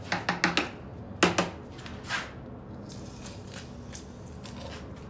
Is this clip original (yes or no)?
yes